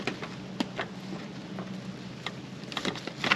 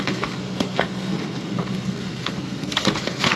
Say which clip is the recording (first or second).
first